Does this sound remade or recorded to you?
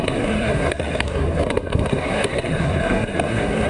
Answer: remade